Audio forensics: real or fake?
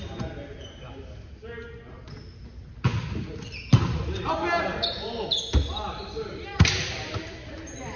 real